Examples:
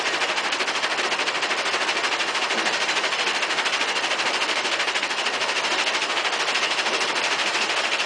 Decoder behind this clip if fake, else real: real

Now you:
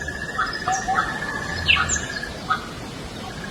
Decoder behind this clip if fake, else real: real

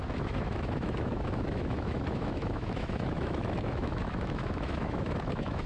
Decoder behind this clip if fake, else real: fake, autoencoder, DAC-VAE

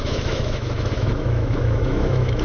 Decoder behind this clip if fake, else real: fake, autoencoder, DAC-VAE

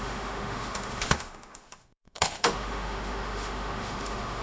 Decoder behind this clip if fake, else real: fake, autoencoder, DAC-VAE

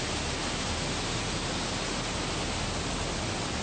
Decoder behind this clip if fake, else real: real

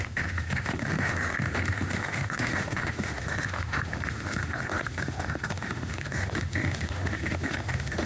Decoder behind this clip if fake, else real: fake, autoencoder, DAC-VAE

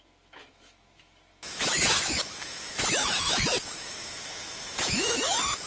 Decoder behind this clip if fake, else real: fake, autoencoder, DAC-VAE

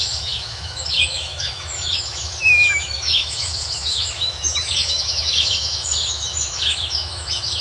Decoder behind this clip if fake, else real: fake, autoencoder, DAC-VAE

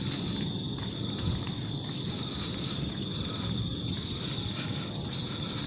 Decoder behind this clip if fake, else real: real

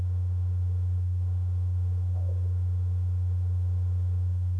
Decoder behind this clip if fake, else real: fake, autoencoder, DAC-VAE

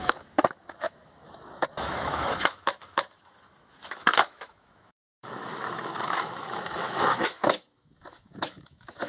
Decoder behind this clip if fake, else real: fake, autoencoder, DAC-VAE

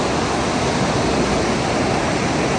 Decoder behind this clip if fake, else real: real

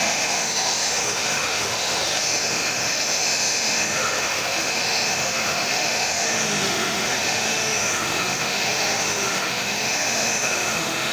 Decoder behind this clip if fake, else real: fake, autoencoder, DAC-VAE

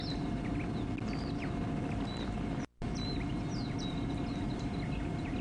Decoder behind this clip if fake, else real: real